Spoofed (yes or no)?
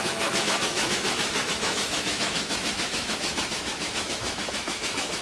yes